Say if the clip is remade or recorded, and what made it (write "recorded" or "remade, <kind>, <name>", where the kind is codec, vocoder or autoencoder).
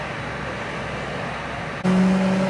recorded